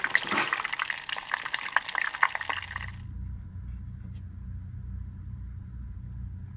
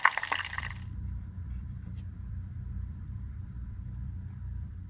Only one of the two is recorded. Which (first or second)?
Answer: first